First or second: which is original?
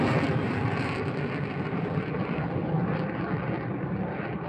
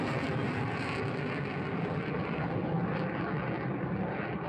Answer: second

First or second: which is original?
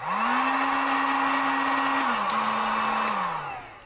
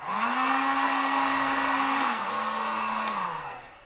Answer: first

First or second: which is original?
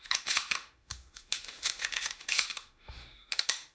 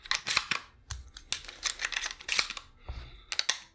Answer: second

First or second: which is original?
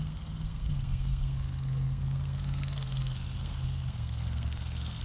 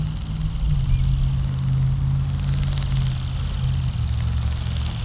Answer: second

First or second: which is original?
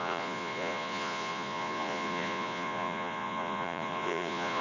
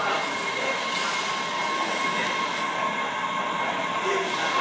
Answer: second